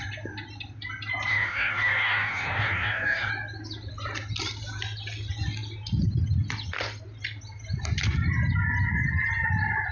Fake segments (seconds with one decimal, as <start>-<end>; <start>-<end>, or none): 1.3-3.3